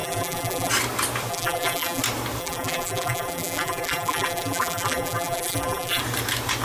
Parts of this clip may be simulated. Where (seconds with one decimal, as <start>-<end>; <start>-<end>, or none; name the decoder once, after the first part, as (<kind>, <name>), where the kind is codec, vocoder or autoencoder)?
0.0-0.7 (vocoder, BigVGAN v2); 1.3-2.0; 2.4-6.0

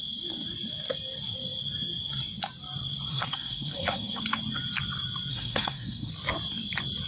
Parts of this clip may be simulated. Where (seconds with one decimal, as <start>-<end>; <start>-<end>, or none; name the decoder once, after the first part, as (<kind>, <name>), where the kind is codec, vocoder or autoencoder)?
3.1-4.2 (codec, SNAC); 5.3-6.1

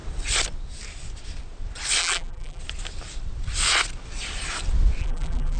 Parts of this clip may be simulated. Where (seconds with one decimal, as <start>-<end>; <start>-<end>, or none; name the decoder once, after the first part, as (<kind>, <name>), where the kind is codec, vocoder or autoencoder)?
2.0-2.6 (vocoder, BigVGAN v2); 5.0-5.6

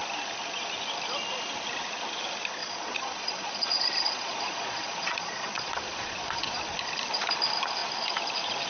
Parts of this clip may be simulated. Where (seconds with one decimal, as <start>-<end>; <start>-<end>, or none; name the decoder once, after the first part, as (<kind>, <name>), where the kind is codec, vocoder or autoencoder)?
2.6-6.6 (vocoder, Vocos)

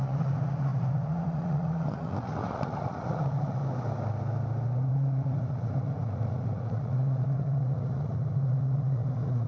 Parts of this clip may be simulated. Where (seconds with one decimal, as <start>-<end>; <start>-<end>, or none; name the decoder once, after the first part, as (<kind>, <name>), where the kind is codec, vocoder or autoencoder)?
0.0-3.6 (vocoder, Vocos); 4.9-9.5